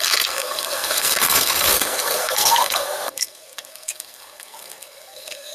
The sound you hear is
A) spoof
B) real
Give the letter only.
A